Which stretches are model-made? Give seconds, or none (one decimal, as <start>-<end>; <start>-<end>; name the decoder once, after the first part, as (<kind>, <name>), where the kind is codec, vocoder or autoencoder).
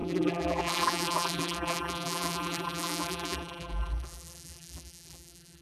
0.0-5.6 (vocoder, BigVGAN v2)